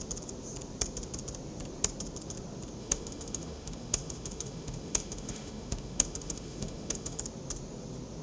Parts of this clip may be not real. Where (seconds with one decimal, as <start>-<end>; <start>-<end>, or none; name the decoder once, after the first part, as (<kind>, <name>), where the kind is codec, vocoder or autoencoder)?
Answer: 2.8-7.2 (autoencoder, DAC-VAE)